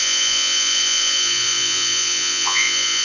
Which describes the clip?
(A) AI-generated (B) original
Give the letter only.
A